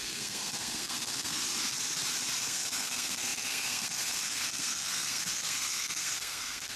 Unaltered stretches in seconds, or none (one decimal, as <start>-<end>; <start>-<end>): 1.4-2.4